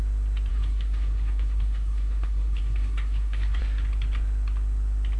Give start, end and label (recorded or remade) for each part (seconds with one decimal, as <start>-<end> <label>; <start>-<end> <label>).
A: 0.0-0.5 recorded; 0.5-3.6 remade; 3.6-5.2 recorded

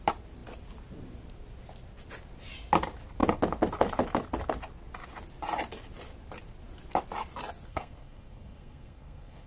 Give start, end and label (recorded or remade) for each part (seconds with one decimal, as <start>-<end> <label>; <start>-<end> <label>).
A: 0.0-7.7 recorded; 7.7-9.5 remade

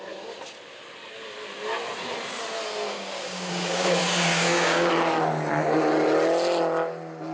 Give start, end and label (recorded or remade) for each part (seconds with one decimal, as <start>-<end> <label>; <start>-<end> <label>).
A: 0.0-2.9 recorded; 2.9-4.9 remade; 4.9-7.3 recorded

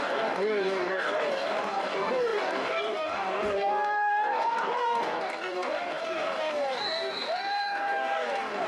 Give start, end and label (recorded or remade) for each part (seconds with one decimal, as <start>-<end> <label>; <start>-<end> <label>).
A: 0.0-8.7 remade

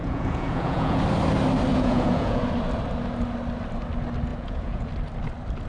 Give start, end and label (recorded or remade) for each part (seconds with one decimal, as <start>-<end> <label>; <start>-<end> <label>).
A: 0.0-1.0 remade; 1.0-1.7 recorded; 1.7-2.4 remade; 2.4-4.3 recorded; 4.3-4.9 remade; 4.9-5.7 recorded

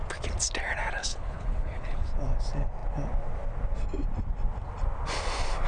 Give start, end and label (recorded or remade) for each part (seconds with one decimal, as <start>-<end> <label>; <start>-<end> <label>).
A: 0.0-1.0 recorded; 1.0-2.1 remade; 2.1-5.7 recorded